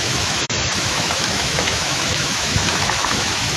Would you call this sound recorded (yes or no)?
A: no